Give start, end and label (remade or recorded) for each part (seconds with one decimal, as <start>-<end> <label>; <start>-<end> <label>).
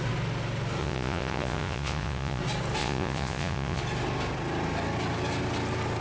0.0-0.8 recorded; 0.8-2.4 remade; 2.4-2.8 recorded; 2.8-3.8 remade; 3.8-6.0 recorded